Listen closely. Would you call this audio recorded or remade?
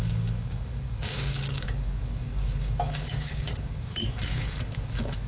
remade